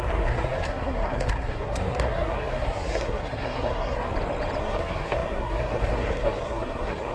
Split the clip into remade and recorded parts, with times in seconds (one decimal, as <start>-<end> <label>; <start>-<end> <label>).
0.0-4.1 remade; 4.1-4.6 recorded; 4.6-7.1 remade